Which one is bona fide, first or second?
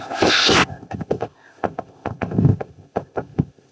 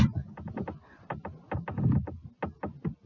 second